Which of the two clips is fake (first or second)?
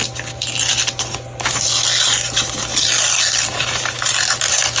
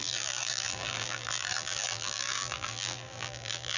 second